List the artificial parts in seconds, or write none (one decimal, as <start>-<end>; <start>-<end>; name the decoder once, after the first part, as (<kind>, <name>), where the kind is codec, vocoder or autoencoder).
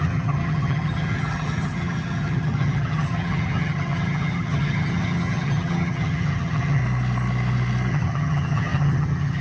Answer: 0.0-6.8 (vocoder, HiFi-GAN); 7.9-9.4